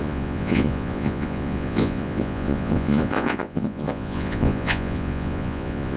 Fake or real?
fake